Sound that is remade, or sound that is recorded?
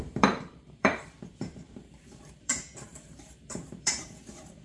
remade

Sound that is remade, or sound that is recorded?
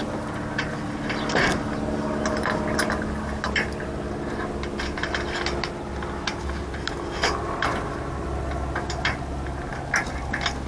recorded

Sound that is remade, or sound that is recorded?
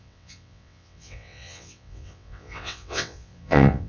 remade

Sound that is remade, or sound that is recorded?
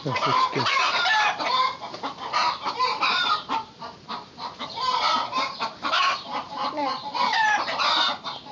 remade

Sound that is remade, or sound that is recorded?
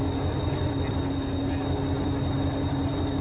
recorded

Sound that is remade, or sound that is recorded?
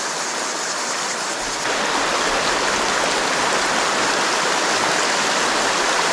recorded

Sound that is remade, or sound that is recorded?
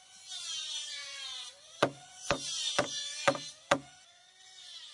remade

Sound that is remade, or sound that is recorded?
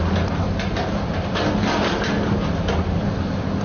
recorded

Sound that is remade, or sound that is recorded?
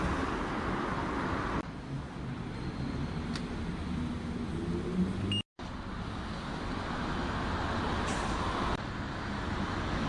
recorded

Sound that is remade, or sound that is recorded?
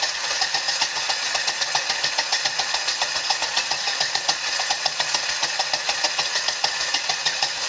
remade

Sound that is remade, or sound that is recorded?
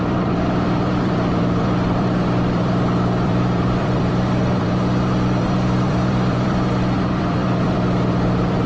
remade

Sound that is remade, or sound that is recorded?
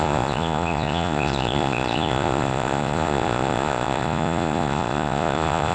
remade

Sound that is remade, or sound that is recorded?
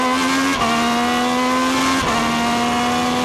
recorded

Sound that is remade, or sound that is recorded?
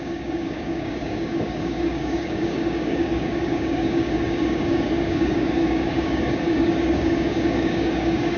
remade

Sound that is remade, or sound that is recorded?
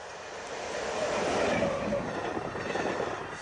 recorded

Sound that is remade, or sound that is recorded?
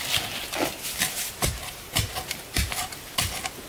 recorded